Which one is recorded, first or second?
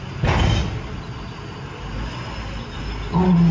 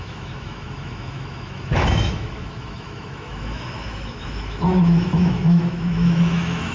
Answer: first